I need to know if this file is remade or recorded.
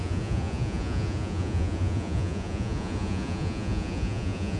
remade